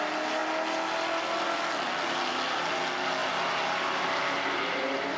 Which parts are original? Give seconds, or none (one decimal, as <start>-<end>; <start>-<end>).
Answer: 0.0-5.2